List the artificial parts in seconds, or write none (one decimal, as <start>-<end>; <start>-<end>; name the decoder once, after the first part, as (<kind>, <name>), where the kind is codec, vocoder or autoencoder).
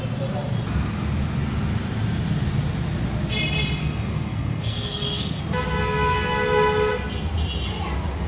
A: 3.8-5.4 (codec, SNAC)